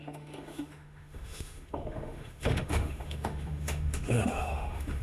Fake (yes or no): yes